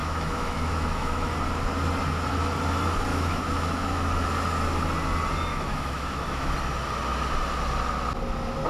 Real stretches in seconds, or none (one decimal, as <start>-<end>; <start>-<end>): 1.3-3.1; 4.1-5.5; 6.5-8.7